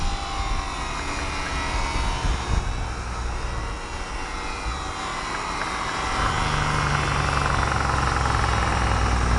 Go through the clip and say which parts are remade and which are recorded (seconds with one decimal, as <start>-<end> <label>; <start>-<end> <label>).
0.0-9.4 recorded